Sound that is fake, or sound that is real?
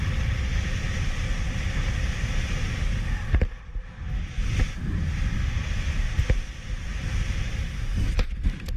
real